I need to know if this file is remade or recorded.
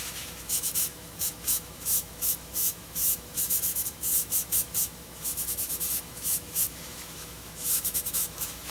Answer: remade